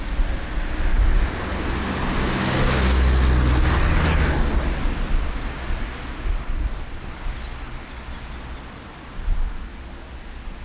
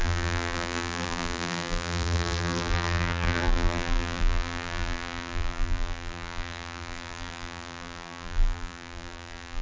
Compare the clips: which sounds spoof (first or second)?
second